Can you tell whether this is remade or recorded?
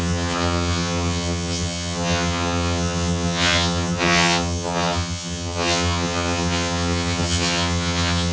remade